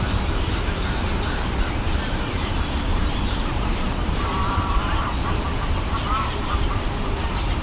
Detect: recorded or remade remade